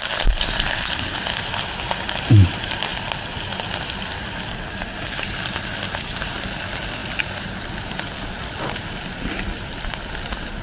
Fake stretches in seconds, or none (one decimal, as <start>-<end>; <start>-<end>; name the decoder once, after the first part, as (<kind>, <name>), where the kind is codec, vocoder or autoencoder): none